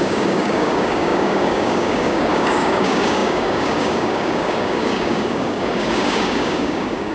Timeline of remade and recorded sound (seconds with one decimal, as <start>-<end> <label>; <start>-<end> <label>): 0.0-7.1 remade